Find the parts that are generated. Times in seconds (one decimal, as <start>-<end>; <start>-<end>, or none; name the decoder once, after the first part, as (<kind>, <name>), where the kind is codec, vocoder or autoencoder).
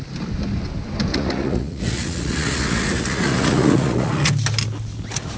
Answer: 1.1-4.3 (vocoder, Vocos)